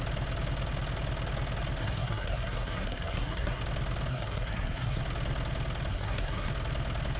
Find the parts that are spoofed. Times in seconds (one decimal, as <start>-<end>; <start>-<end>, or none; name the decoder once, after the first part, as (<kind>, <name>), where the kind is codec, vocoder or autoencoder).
1.8-3.6 (codec, SNAC); 4.1-5.0; 5.9-6.5